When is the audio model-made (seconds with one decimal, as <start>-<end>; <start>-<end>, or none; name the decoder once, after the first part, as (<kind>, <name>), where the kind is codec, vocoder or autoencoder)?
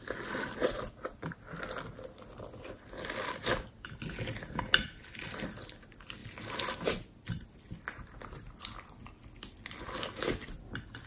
6.2-6.9 (vocoder, BigVGAN v2)